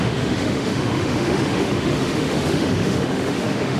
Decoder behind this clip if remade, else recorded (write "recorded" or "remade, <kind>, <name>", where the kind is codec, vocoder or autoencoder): remade, autoencoder, DAC-VAE